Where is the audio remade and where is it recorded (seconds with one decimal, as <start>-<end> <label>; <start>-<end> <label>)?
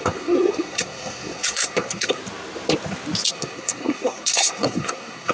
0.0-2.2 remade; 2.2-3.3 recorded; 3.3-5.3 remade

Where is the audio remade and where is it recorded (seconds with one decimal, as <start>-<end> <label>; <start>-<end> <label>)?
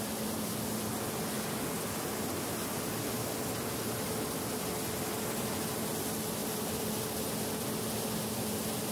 0.0-8.9 recorded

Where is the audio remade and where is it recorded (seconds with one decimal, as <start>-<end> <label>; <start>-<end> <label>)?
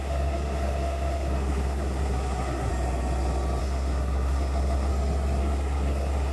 0.0-2.7 remade; 2.7-3.6 recorded; 3.6-4.9 remade; 4.9-5.4 recorded; 5.4-6.3 remade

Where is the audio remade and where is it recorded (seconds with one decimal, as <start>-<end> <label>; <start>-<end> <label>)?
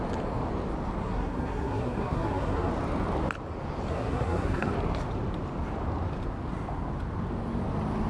0.0-1.0 recorded; 1.0-2.7 remade; 2.7-3.9 recorded; 3.9-4.7 remade; 4.7-8.1 recorded